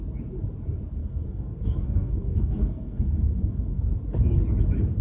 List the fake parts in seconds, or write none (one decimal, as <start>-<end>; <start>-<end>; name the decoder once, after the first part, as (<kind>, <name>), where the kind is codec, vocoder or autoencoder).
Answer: 1.0-4.0 (codec, SNAC)